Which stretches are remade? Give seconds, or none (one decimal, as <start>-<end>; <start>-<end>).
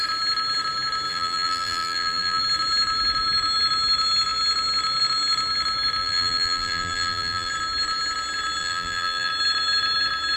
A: 1.1-2.4; 6.0-7.5; 8.6-9.3